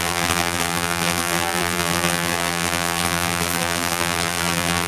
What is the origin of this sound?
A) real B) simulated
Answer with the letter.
B